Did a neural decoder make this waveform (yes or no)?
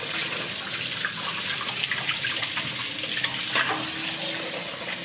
no